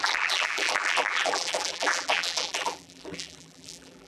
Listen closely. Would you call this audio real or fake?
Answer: fake